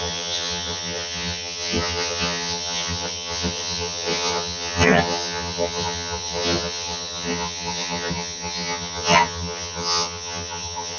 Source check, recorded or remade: remade